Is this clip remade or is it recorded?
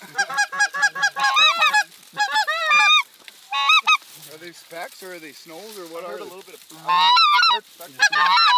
recorded